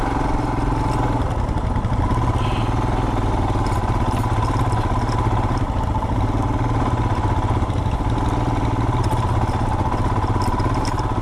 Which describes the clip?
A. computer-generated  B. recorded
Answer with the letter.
B